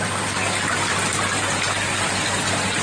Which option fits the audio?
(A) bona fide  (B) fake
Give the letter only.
A